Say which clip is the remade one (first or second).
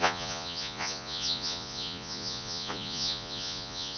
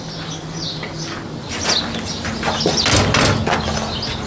first